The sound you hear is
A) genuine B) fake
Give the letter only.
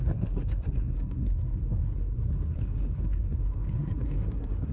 B